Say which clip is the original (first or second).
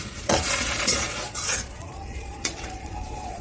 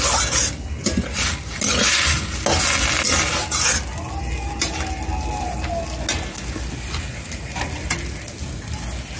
second